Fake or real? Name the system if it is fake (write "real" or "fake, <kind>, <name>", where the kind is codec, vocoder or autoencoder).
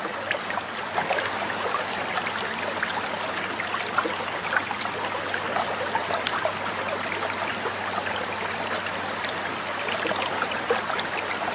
real